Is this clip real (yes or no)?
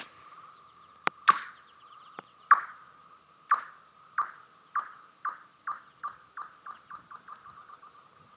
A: yes